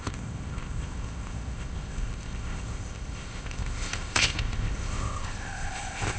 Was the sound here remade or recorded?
remade